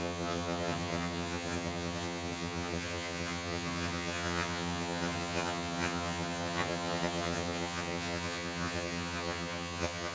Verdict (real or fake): fake